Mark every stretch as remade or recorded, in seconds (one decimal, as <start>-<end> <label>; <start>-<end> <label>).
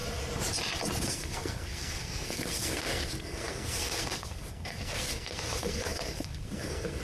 0.0-1.0 recorded; 1.0-7.0 remade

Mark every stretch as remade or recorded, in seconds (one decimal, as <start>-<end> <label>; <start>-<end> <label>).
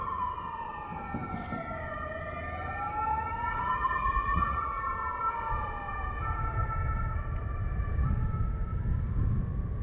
0.0-3.1 recorded; 3.1-4.9 remade; 4.9-9.8 recorded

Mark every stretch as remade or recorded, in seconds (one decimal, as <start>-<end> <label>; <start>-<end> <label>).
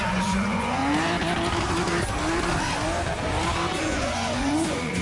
0.0-0.8 remade; 0.8-3.8 recorded; 3.8-5.0 remade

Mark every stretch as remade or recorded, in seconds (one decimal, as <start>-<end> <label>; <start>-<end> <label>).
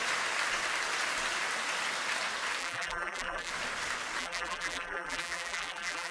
0.0-2.6 recorded; 2.6-3.5 remade; 3.5-4.2 recorded; 4.2-6.1 remade